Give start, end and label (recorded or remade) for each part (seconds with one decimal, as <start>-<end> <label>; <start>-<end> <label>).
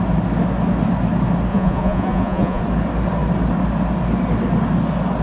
0.0-1.5 recorded; 1.5-2.6 remade; 2.6-5.2 recorded